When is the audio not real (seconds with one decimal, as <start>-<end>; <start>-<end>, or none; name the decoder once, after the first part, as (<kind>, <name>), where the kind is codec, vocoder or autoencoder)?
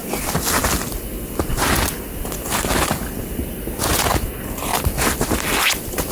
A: none